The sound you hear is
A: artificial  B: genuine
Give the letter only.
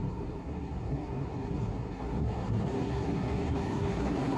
A